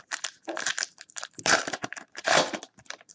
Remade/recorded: remade